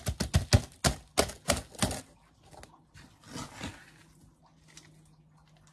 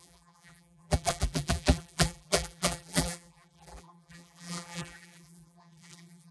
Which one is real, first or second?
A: first